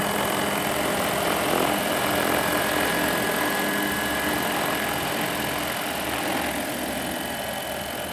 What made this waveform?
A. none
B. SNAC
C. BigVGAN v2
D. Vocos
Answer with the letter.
C